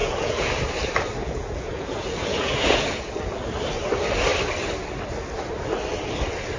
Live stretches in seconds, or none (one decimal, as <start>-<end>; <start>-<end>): 0.5-1.2; 3.1-6.6